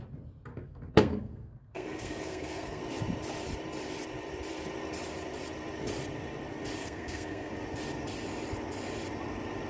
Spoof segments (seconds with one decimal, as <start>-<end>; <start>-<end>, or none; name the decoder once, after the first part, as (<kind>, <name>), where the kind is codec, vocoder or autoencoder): 0.5-2.8 (codec, SNAC); 6.8-7.5